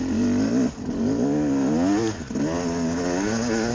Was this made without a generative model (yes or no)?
yes